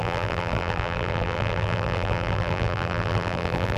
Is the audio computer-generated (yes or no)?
yes